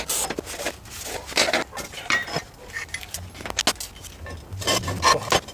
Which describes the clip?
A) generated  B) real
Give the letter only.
B